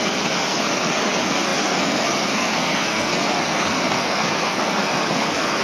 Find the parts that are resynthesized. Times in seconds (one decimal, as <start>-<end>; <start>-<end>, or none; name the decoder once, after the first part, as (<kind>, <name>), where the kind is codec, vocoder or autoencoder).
0.0-5.6 (codec, SNAC)